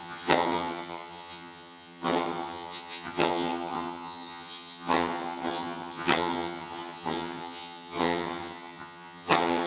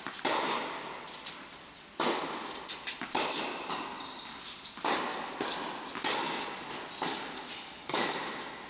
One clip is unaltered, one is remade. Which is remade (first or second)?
first